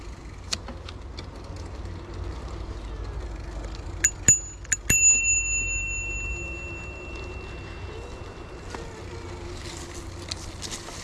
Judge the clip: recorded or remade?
recorded